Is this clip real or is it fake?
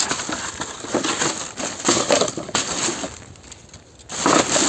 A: real